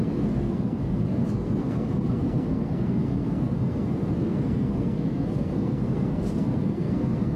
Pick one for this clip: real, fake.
fake